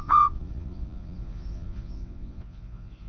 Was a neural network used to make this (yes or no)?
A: yes